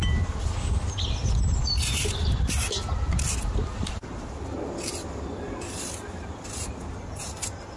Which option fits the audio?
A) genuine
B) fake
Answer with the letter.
A